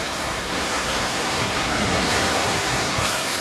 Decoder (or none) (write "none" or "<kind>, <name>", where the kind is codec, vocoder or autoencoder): codec, SNAC